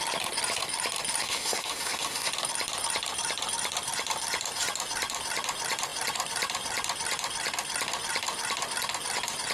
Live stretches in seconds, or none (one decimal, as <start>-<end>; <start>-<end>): 0.0-1.2; 2.3-9.5